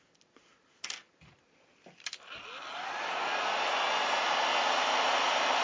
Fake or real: real